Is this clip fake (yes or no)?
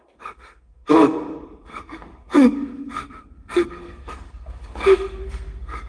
yes